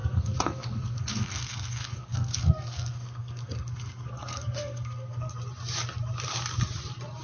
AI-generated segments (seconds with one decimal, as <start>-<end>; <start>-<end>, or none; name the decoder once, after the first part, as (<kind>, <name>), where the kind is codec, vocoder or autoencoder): 0.0-5.3 (codec, SNAC)